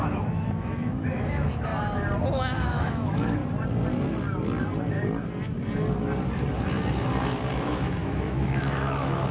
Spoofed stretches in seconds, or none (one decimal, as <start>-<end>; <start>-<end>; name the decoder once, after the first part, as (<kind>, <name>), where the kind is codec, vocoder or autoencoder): 0.0-1.7 (autoencoder, DAC-VAE); 2.3-3.4; 7.5-9.3